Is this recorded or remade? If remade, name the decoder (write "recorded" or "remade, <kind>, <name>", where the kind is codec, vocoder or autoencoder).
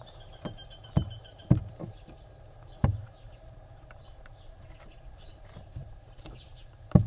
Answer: remade, vocoder, BigVGAN v2